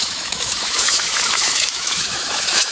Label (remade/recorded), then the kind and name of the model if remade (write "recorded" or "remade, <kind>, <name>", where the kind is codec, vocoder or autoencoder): remade, autoencoder, DAC-VAE